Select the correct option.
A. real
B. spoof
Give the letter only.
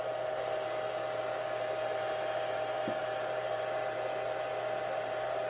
A